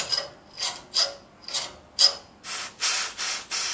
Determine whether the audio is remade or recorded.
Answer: recorded